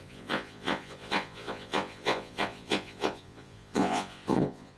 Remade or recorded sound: remade